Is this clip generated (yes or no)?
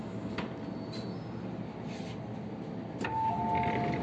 no